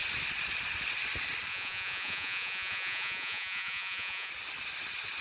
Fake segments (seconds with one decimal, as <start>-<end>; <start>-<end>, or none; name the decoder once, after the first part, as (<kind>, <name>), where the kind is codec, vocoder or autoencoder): 1.5-4.3 (vocoder, Vocos)